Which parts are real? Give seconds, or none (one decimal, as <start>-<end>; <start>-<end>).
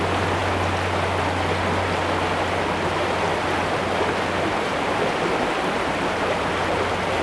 0.0-7.2